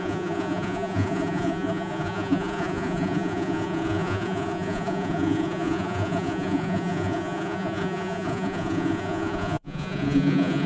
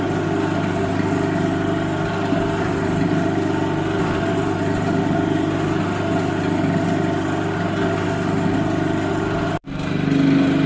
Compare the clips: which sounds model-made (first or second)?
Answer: first